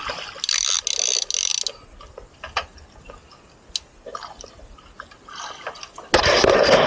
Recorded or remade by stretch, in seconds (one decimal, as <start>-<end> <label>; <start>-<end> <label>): 0.0-6.9 recorded